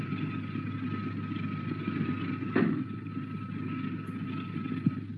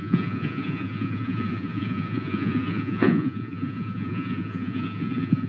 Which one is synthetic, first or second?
second